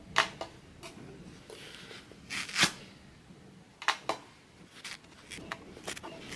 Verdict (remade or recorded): recorded